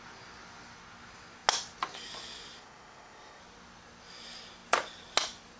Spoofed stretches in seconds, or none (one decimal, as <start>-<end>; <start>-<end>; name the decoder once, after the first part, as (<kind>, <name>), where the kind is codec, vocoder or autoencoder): 2.6-3.4 (codec, ZipCodec)